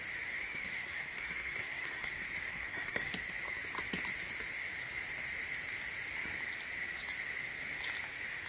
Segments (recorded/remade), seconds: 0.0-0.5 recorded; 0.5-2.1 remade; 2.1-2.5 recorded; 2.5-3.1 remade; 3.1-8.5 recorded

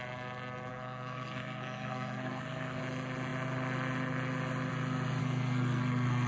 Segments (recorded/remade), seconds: 0.0-0.7 recorded; 0.7-2.8 remade; 2.8-5.2 recorded; 5.2-6.3 remade

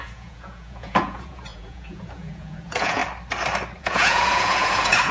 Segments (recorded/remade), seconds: 0.0-3.0 remade; 3.0-3.8 recorded; 3.8-5.1 remade

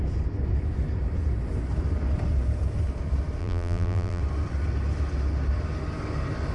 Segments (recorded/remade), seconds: 0.0-3.4 recorded; 3.4-4.2 remade; 4.2-6.5 recorded